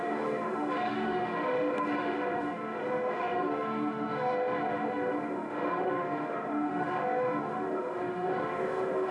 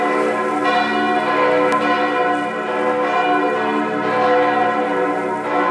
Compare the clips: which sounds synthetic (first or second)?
first